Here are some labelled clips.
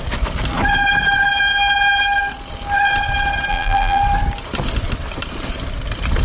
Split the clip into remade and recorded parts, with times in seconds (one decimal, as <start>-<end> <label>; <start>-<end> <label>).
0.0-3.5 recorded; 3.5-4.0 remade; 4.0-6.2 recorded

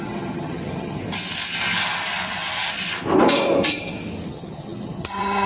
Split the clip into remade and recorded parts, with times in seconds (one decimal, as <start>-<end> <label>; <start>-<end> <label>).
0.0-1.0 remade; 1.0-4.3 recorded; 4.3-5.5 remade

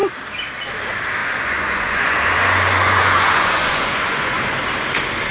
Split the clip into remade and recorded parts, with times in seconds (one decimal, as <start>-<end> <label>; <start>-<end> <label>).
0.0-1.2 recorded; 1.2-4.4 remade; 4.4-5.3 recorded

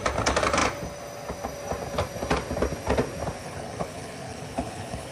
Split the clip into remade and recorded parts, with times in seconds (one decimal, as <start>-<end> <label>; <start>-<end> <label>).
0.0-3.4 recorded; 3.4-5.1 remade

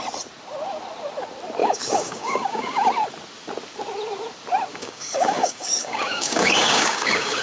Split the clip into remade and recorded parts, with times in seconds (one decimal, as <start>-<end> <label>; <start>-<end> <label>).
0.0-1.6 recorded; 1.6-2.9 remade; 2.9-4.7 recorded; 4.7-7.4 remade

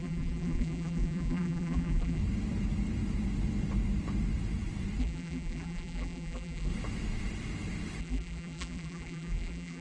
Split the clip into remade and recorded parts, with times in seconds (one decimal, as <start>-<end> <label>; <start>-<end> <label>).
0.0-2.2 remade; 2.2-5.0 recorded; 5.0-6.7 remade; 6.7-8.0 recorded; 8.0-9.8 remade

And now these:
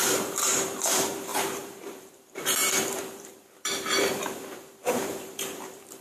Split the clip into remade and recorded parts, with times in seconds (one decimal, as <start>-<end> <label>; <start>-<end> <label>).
0.0-6.0 remade